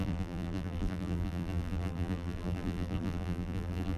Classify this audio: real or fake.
fake